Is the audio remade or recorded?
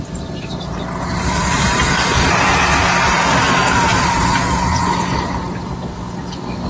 recorded